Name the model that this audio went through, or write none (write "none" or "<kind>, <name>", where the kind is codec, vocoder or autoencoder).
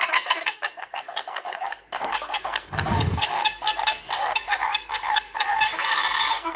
codec, SNAC